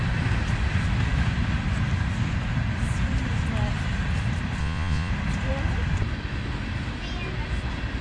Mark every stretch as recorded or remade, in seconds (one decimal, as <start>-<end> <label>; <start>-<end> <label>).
0.0-4.6 recorded; 4.6-5.1 remade; 5.1-8.0 recorded